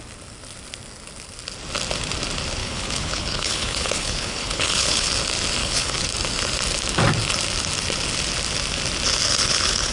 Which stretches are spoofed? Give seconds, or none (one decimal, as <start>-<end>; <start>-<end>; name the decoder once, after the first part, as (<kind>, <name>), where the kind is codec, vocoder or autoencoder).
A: 2.6-5.1 (codec, HILCodec); 5.6-6.1; 9.3-9.9